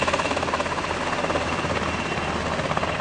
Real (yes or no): yes